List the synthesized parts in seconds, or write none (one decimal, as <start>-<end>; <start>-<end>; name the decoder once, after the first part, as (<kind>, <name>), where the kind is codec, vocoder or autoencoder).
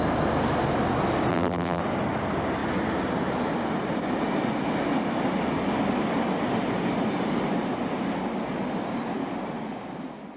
1.3-1.8 (vocoder, BigVGAN v2)